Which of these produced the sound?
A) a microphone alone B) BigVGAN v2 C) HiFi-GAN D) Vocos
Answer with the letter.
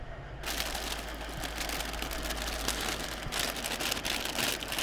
A